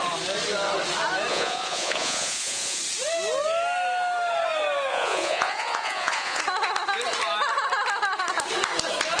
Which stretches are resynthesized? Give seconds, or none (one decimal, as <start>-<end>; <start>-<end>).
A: 1.3-2.8; 4.9-6.4